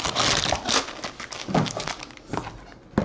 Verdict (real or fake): real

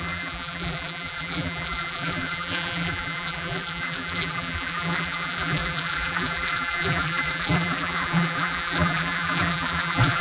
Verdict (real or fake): fake